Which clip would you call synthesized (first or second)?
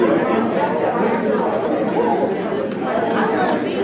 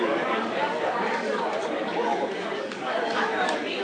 second